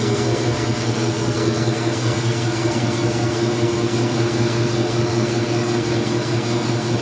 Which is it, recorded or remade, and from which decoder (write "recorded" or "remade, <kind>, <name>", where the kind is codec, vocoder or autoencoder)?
remade, codec, SNAC